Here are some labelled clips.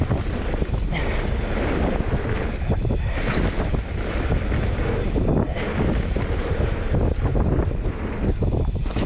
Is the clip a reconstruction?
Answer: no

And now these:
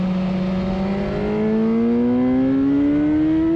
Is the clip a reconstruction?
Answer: no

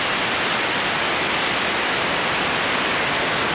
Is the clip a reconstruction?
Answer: no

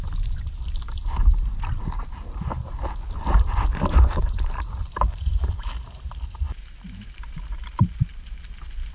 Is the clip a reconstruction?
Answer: yes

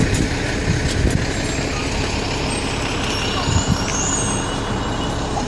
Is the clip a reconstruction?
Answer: no